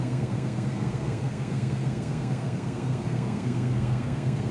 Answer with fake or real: fake